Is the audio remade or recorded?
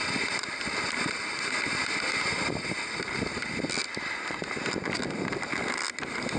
recorded